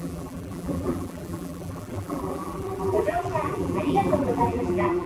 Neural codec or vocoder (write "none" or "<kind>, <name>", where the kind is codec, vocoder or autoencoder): vocoder, BigVGAN v2